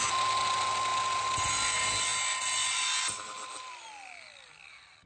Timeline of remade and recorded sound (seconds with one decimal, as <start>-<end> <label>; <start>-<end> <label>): 0.0-5.1 recorded